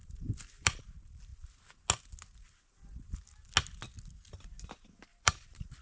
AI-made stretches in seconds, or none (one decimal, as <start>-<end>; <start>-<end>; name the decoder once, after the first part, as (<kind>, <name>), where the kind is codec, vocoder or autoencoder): 0.0-0.8 (vocoder, BigVGAN v2); 5.1-5.8